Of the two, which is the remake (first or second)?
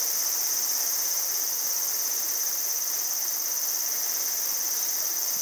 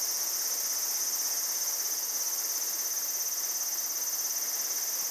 first